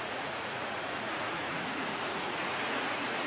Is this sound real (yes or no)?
no